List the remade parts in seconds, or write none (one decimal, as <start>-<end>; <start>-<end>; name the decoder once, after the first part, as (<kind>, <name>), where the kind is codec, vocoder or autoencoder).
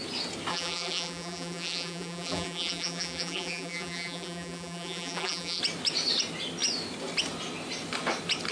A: 0.5-5.6 (vocoder, BigVGAN v2)